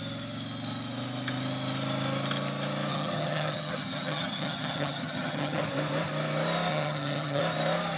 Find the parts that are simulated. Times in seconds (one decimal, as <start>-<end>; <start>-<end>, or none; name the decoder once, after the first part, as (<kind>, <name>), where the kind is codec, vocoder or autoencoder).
2.9-5.6 (vocoder, HiFi-GAN); 6.7-7.4